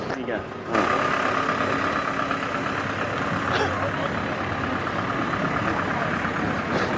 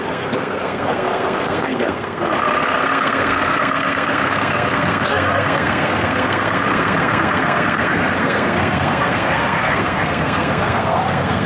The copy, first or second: second